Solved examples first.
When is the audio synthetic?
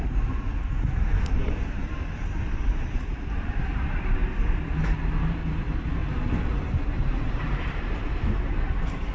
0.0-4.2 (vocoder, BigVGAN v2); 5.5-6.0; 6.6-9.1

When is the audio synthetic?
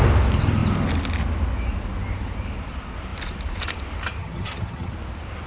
4.2-4.9 (vocoder, HiFi-GAN)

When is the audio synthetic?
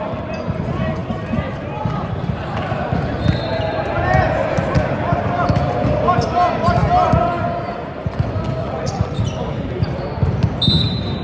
8.6-9.2 (vocoder, Vocos)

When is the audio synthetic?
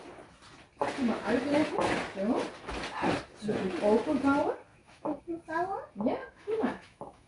4.7-5.2 (autoencoder, DAC-VAE); 6.2-7.3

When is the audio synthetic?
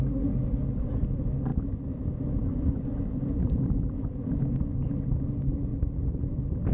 1.5-4.9 (vocoder, BigVGAN v2); 5.7-6.7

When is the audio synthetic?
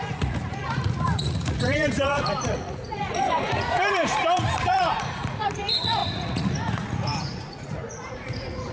0.0-8.7 (vocoder, Vocos)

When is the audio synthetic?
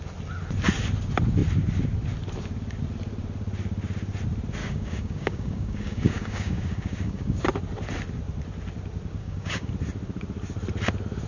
4.6-7.4 (codec, DAC); 9.2-9.7